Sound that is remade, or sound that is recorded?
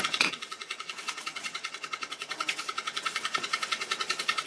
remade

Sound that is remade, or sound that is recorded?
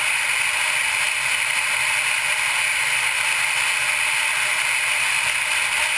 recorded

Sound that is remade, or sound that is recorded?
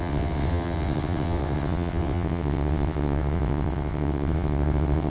remade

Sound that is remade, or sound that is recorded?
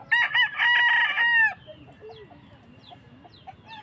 recorded